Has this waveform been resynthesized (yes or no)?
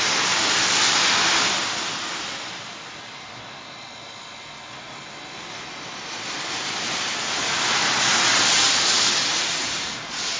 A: no